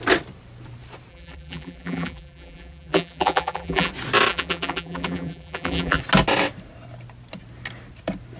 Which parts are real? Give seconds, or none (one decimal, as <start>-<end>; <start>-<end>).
0.0-1.1; 3.9-4.3; 6.0-8.4

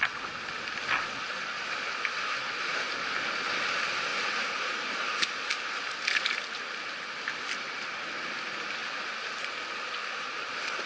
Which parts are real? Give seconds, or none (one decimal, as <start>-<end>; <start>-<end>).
0.0-10.9